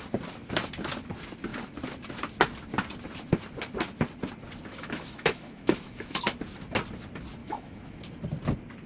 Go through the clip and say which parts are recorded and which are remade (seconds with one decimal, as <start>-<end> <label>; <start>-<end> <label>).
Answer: 0.0-4.7 recorded; 4.7-6.2 remade; 6.2-7.4 recorded; 7.4-8.0 remade; 8.0-8.9 recorded